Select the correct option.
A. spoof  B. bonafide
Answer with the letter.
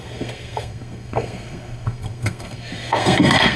A